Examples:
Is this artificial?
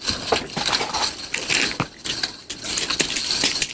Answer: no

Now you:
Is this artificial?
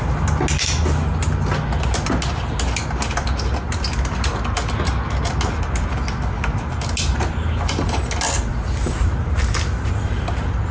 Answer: no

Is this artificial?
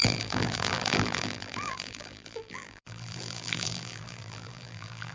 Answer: yes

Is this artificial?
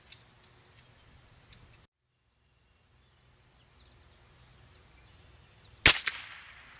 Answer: no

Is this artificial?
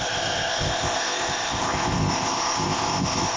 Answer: yes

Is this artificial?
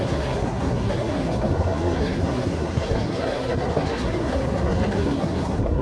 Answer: yes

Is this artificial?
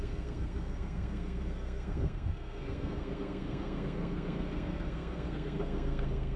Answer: yes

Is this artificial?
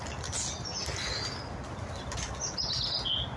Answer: no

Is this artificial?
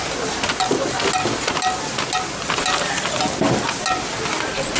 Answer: no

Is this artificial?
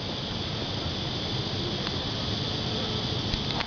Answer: no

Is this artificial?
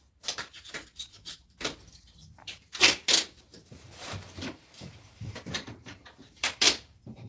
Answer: yes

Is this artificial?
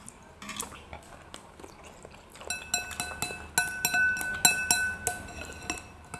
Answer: no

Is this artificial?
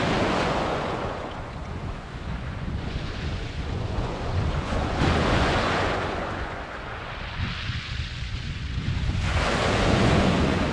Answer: yes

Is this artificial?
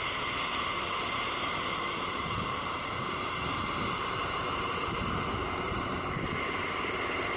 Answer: yes